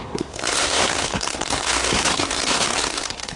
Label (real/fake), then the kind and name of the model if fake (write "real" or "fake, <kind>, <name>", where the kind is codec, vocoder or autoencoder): fake, codec, SNAC